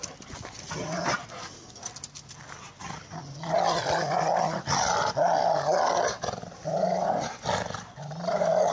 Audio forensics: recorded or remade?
recorded